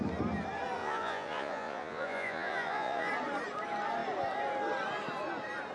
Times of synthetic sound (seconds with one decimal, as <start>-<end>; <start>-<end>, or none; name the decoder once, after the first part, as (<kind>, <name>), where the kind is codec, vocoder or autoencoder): 0.8-3.1 (vocoder, Vocos)